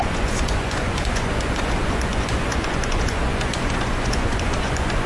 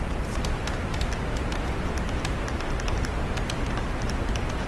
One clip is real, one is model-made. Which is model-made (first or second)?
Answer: first